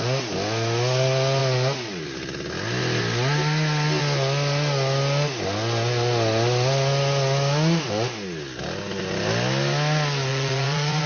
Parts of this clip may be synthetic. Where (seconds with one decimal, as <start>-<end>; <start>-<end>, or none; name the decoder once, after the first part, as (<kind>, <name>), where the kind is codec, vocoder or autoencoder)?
10.3-11.1 (vocoder, Vocos)